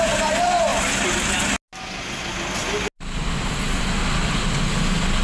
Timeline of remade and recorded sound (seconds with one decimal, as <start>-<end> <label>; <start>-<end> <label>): 0.0-5.2 recorded

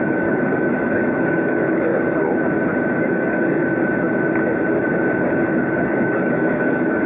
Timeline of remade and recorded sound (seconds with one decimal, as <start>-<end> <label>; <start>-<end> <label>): 0.0-0.7 remade; 0.7-1.2 recorded; 1.2-1.9 remade; 1.9-3.1 recorded; 3.1-3.6 remade; 3.6-5.6 recorded; 5.6-7.1 remade

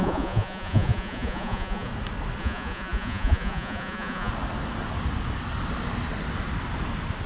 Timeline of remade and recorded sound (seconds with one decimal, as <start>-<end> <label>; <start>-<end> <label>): 0.0-1.9 remade; 1.9-2.4 recorded; 2.4-4.3 remade; 4.3-7.3 recorded

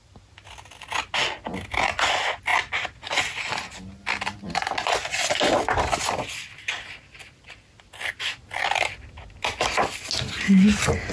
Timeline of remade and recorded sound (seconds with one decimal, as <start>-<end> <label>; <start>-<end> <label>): 0.0-11.1 recorded

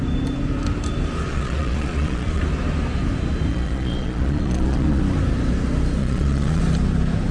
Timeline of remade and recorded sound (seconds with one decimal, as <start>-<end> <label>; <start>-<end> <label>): 0.0-1.3 recorded; 1.3-2.4 remade; 2.4-3.5 recorded; 3.5-5.0 remade; 5.0-6.0 recorded; 6.0-6.6 remade; 6.6-7.3 recorded

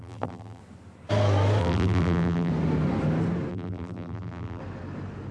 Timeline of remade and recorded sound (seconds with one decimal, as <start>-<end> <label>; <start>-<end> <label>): 0.0-0.6 remade; 0.6-1.6 recorded; 1.6-2.5 remade; 2.5-3.5 recorded; 3.5-4.6 remade; 4.6-5.3 recorded

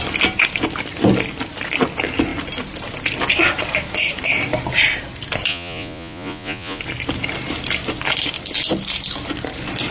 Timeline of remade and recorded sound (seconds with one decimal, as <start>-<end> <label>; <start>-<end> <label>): 0.0-5.5 recorded; 5.5-6.8 remade; 6.8-9.9 recorded

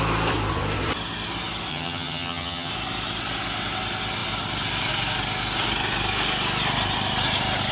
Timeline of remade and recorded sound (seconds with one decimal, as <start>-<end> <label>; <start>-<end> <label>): 0.0-1.7 recorded; 1.7-2.7 remade; 2.7-7.7 recorded